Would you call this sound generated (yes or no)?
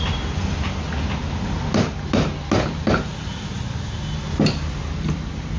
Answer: no